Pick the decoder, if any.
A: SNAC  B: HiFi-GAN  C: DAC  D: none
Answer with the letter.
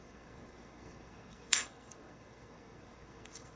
A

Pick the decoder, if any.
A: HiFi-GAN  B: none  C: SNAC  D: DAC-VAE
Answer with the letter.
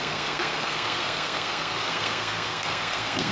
C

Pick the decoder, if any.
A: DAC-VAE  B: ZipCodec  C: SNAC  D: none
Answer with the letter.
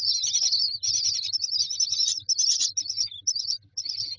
D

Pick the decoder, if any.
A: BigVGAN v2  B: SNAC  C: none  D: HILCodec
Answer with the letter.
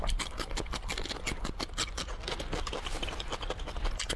C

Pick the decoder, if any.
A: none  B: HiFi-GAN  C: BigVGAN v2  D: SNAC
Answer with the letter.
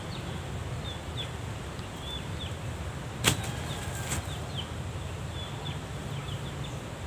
A